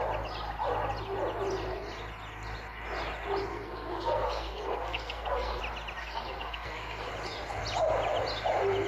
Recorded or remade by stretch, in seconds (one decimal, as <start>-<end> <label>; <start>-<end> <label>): 0.0-3.5 recorded; 3.5-5.6 remade; 5.6-6.0 recorded; 6.0-7.1 remade; 7.1-8.9 recorded